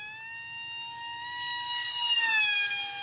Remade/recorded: recorded